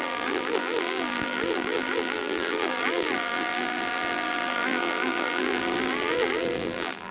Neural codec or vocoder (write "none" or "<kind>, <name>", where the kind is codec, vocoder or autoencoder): vocoder, BigVGAN v2